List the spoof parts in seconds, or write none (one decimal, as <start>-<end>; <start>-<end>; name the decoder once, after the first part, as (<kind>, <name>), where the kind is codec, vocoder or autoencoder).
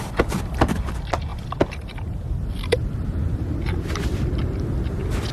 none